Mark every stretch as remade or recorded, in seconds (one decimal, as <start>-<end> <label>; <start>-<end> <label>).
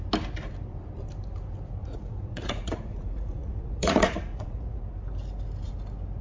0.0-1.8 recorded; 1.8-4.8 remade; 4.8-6.2 recorded